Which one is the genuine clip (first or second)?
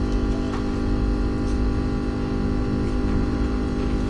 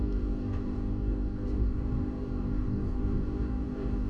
first